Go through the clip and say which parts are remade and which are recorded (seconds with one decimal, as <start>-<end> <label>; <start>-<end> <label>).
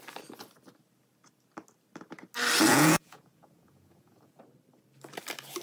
0.0-2.7 recorded; 2.7-4.4 remade; 4.4-5.6 recorded